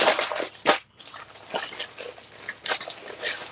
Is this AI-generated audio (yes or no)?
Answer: no